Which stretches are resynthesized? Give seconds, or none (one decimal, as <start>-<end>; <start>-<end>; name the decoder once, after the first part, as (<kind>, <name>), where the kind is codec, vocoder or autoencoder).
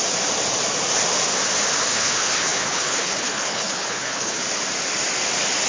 1.9-4.4 (codec, HILCodec)